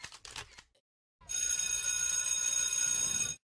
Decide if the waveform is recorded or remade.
recorded